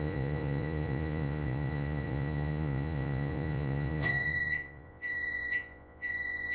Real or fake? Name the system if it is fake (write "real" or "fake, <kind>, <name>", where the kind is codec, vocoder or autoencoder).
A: fake, vocoder, Vocos